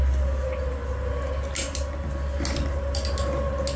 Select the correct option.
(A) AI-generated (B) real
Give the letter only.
B